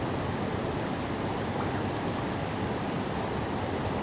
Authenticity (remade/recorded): recorded